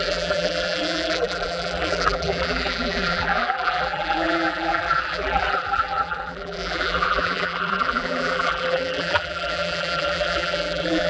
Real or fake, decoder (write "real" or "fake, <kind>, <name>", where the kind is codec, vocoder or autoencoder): fake, vocoder, BigVGAN v2